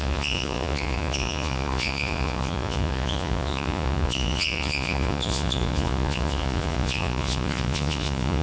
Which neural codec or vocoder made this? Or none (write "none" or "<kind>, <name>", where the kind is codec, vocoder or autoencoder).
vocoder, Vocos